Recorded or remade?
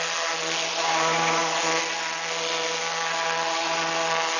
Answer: recorded